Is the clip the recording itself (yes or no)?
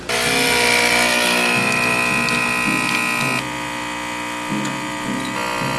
yes